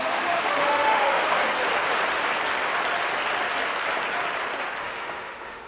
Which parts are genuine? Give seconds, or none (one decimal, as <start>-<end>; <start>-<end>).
1.4-4.8